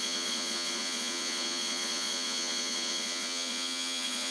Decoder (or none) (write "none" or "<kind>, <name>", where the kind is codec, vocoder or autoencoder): vocoder, Vocos